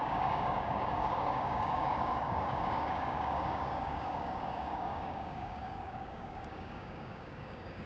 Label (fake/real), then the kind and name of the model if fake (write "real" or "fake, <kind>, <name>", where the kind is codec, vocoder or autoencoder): fake, codec, DAC